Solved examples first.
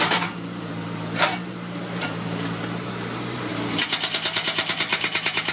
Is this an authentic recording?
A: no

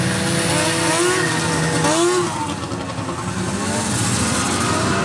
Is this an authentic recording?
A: yes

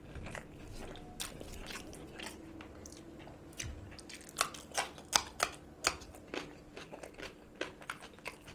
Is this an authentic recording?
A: yes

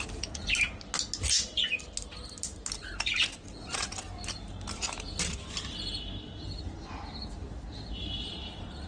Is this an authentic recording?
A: yes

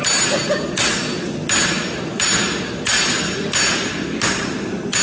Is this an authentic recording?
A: yes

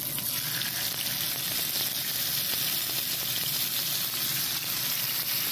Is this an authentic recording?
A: yes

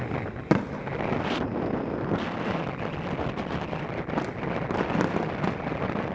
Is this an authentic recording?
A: yes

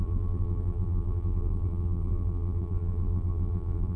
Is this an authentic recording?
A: no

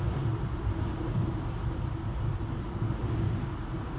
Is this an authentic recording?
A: yes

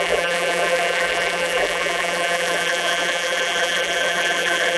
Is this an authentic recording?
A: no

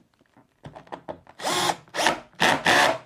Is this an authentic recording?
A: yes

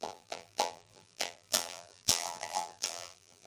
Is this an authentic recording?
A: no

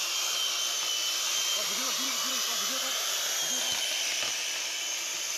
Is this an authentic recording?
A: yes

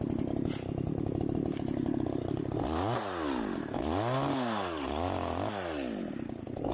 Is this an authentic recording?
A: yes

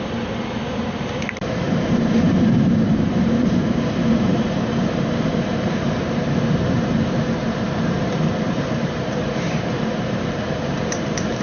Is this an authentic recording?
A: no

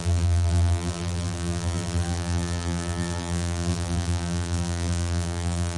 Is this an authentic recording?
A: no